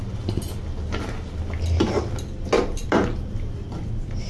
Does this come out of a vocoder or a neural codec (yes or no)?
no